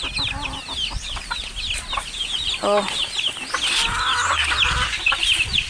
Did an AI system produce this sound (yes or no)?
no